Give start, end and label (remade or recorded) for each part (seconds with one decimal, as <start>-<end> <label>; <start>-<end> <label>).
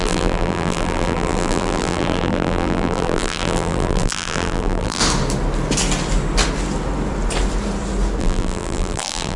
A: 0.0-5.0 remade; 5.0-8.2 recorded; 8.2-9.4 remade